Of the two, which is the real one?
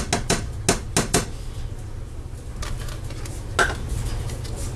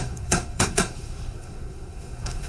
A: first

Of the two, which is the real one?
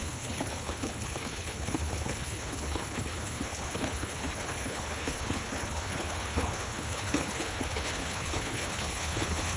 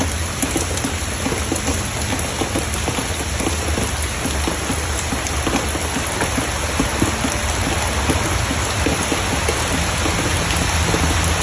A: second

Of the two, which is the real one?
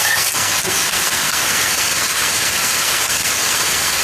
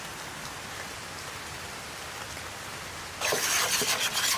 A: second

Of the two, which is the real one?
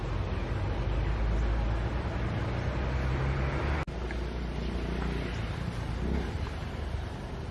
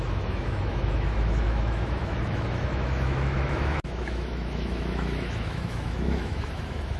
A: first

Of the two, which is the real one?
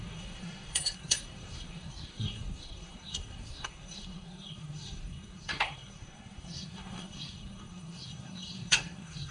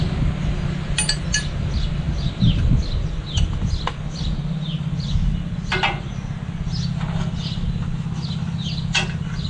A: second